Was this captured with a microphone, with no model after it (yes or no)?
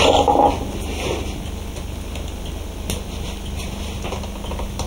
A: yes